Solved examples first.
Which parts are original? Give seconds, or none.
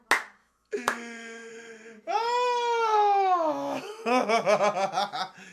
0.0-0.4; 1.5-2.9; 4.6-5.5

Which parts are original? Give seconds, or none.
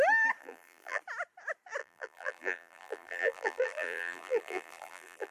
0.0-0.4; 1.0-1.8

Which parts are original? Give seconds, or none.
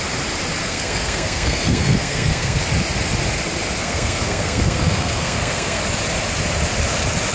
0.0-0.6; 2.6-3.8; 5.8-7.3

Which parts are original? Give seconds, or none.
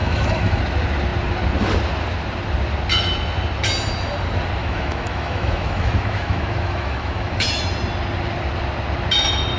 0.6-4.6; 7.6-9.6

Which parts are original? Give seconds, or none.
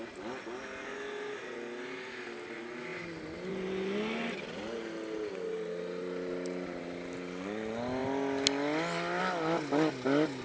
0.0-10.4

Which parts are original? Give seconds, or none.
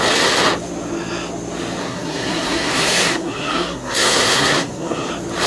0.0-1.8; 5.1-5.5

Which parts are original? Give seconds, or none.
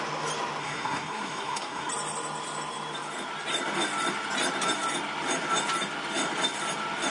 0.0-0.6; 1.9-7.1